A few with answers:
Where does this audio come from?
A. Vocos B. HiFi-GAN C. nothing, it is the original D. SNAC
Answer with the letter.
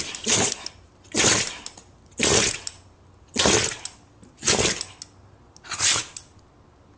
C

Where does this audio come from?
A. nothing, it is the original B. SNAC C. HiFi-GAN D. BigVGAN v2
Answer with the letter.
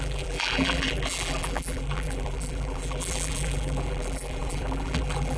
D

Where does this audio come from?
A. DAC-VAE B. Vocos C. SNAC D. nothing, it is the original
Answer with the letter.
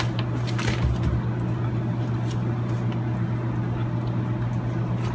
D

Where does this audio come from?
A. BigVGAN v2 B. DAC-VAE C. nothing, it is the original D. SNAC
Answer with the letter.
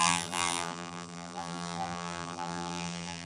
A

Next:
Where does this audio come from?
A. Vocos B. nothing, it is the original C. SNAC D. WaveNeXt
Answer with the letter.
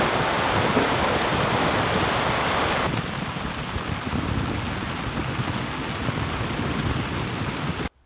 B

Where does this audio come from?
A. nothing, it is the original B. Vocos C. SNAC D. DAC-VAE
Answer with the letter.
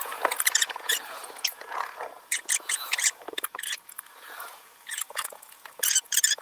B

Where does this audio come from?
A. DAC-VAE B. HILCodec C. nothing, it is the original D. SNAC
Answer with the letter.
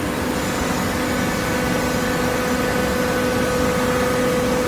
C